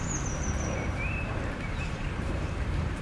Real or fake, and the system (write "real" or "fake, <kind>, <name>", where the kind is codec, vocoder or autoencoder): fake, vocoder, BigVGAN v2